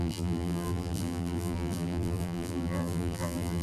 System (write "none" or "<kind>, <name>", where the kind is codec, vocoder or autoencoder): vocoder, BigVGAN v2